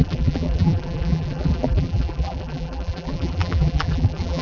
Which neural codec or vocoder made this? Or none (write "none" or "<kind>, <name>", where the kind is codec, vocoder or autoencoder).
vocoder, BigVGAN v2